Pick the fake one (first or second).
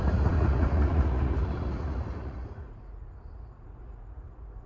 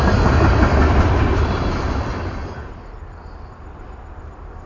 first